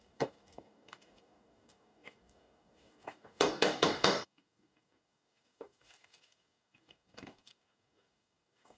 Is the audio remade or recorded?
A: remade